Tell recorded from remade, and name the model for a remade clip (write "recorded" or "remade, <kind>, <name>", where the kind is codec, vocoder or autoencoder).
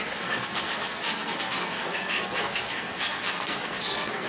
remade, codec, SNAC